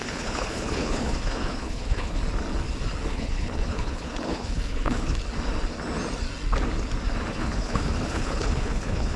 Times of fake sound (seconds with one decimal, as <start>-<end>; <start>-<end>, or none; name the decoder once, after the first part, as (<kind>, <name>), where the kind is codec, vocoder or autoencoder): 0.0-2.2 (codec, HILCodec); 3.1-5.2; 7.3-9.2